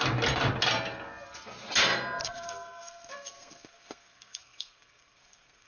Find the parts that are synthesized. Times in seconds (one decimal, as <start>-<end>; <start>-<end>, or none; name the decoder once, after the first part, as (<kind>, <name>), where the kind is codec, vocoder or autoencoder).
2.2-5.7 (codec, SNAC)